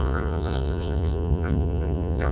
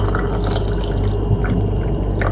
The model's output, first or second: first